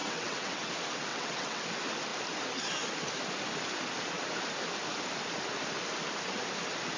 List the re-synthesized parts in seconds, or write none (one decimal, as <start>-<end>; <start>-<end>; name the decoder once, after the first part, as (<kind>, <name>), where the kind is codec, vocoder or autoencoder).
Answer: 0.0-0.7 (vocoder, WaveNeXt); 1.1-1.6